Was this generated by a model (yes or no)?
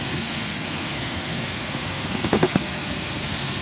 yes